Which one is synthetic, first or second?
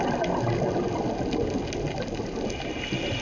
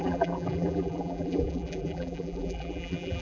second